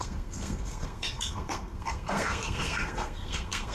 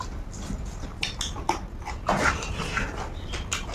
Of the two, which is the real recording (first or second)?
second